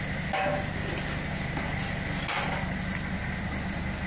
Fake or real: real